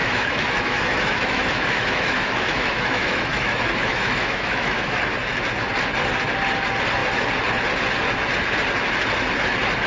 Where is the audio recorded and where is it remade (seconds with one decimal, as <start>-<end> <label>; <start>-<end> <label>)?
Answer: 0.0-5.0 remade; 5.0-9.9 recorded